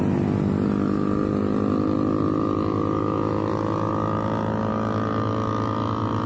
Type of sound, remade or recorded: recorded